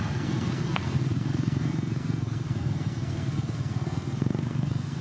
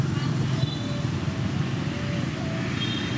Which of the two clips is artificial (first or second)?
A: first